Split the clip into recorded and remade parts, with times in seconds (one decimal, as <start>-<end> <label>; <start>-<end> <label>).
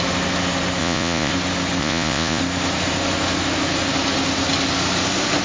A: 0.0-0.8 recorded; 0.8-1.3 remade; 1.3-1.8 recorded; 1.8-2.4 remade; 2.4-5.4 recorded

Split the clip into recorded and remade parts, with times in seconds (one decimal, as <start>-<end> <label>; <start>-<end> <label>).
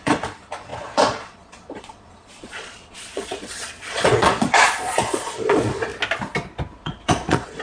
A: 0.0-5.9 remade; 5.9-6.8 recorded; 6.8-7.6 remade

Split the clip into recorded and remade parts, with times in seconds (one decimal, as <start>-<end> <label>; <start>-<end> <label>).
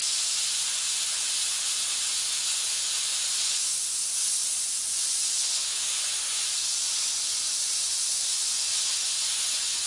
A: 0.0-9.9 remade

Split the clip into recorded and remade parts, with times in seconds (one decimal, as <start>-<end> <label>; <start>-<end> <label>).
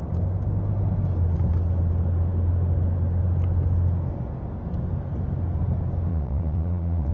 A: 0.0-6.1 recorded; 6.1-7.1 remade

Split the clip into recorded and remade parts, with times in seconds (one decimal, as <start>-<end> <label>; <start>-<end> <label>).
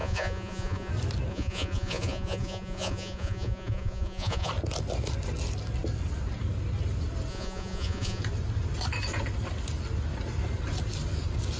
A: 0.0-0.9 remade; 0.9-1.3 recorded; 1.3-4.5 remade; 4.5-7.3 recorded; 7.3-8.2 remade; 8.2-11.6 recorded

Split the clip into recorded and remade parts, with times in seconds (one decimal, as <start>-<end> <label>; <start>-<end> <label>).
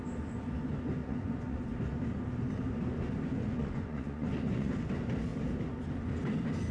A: 0.0-1.0 recorded; 1.0-1.6 remade; 1.6-3.3 recorded; 3.3-4.7 remade; 4.7-6.7 recorded